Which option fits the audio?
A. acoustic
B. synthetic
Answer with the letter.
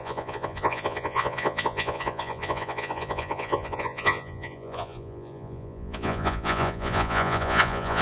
B